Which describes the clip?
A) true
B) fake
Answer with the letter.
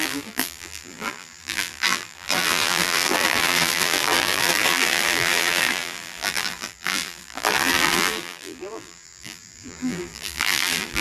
B